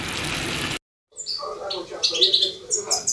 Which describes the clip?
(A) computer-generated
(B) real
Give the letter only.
B